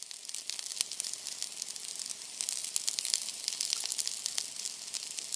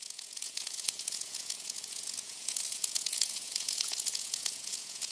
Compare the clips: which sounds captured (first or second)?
first